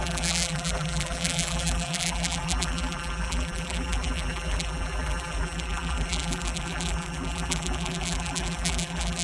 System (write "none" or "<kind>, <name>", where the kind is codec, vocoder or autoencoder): vocoder, BigVGAN v2